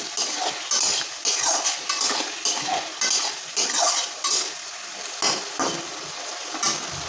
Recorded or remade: recorded